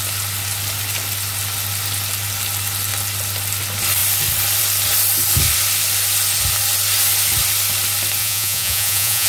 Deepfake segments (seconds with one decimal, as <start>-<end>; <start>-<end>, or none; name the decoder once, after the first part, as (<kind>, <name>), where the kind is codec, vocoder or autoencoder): 8.2-9.3 (vocoder, Vocos)